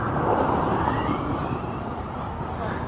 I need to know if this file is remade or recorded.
recorded